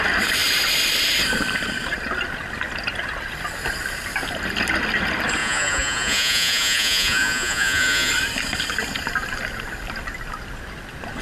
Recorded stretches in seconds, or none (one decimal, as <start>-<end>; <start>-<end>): 0.0-5.4; 8.1-11.2